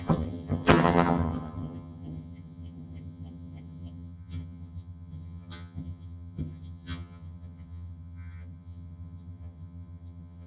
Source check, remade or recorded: remade